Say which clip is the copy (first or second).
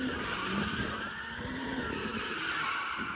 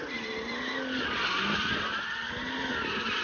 first